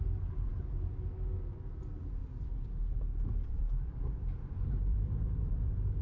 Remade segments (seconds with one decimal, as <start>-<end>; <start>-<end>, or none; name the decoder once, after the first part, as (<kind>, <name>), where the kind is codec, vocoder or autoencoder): 2.2-6.0 (vocoder, BigVGAN v2)